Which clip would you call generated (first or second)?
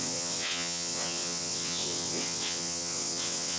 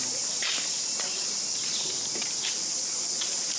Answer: first